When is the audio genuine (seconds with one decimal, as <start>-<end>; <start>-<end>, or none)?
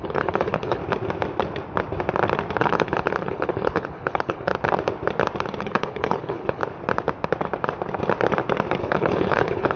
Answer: 0.8-2.6; 4.5-5.6; 6.6-8.8